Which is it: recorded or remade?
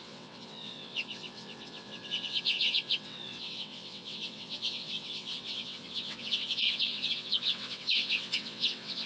remade